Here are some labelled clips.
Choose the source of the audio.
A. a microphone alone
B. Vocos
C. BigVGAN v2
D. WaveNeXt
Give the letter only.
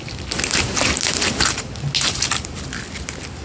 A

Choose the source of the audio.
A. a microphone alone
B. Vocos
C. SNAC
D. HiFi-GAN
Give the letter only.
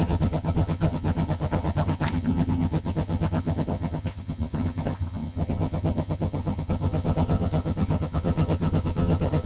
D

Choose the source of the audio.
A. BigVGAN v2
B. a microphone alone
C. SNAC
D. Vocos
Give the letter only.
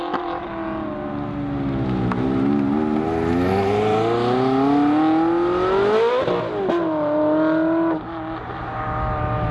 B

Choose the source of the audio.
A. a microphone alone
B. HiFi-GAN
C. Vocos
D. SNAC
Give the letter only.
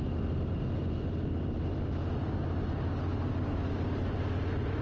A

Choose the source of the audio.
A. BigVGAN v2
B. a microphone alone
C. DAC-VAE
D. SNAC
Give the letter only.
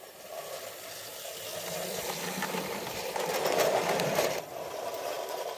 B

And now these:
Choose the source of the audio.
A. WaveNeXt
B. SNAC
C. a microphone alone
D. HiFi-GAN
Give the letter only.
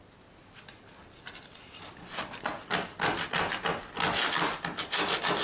C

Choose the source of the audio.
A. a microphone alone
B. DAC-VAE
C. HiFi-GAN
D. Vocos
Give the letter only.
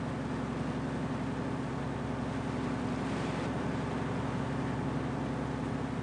A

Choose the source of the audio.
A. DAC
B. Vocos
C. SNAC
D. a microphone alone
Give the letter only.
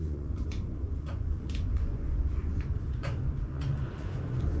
B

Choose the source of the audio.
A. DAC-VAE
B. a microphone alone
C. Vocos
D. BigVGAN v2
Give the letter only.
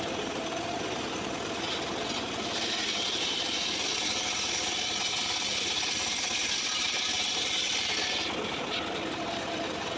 B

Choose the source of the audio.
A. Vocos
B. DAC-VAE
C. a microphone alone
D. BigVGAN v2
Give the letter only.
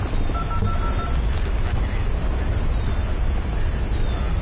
C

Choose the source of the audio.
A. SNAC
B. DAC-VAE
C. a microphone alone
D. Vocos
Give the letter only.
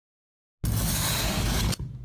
C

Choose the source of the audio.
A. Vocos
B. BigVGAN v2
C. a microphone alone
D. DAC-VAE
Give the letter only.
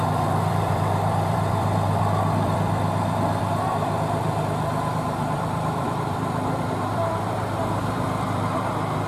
B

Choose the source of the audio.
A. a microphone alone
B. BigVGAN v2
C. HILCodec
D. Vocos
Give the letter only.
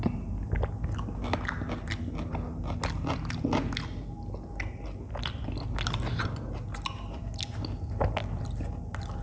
A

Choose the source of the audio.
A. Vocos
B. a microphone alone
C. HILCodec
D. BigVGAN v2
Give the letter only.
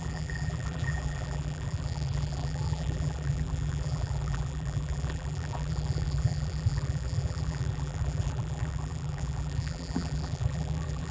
D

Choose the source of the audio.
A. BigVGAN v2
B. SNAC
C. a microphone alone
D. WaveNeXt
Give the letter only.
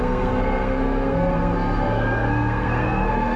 B